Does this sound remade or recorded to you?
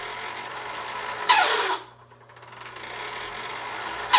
recorded